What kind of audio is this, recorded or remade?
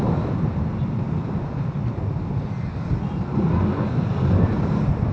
recorded